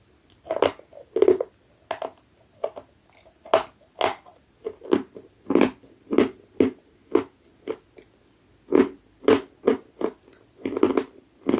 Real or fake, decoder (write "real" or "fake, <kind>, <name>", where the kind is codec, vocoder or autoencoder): real